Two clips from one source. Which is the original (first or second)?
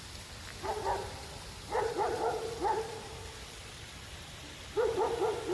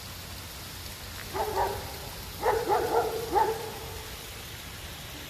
second